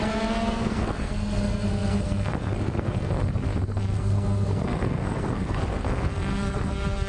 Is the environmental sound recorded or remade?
remade